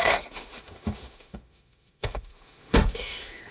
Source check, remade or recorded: remade